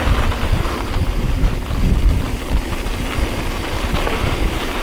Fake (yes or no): no